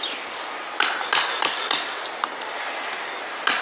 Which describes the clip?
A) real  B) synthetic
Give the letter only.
A